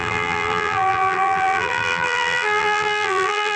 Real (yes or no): no